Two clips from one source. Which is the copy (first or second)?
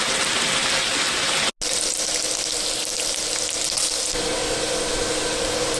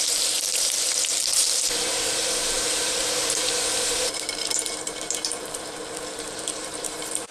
second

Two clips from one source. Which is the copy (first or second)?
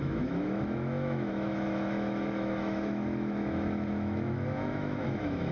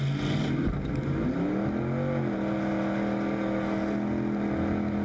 first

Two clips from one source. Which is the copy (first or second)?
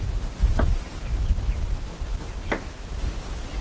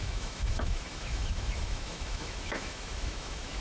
second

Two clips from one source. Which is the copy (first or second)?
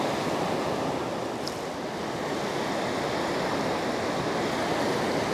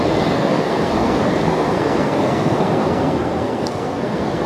second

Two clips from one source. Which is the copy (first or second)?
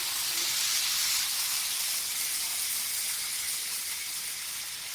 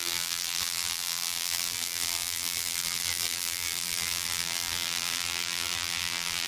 second